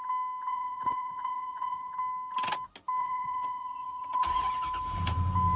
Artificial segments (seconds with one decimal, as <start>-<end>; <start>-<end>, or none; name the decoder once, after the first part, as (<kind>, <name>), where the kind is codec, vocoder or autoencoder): 0.5-1.9 (vocoder, Vocos); 3.0-4.5